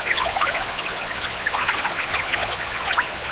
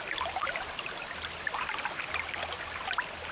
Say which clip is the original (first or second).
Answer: second